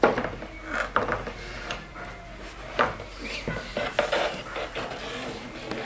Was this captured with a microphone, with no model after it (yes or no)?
yes